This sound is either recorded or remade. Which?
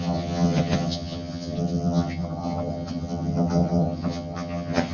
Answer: remade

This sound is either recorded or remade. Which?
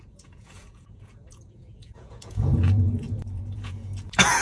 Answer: remade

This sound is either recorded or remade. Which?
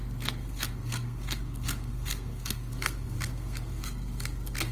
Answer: remade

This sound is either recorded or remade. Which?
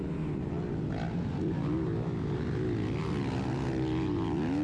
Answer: recorded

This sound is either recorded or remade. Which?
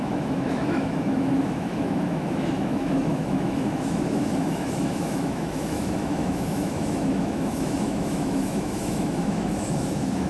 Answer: remade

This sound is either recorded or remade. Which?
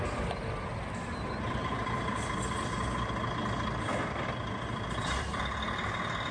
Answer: recorded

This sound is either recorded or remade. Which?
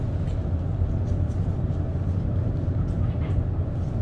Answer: recorded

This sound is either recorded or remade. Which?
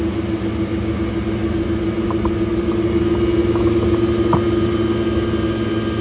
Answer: recorded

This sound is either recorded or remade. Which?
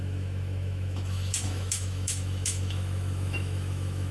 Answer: remade